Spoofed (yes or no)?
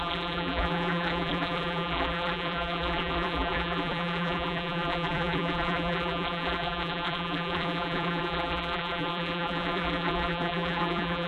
yes